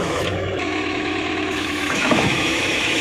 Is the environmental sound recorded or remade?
remade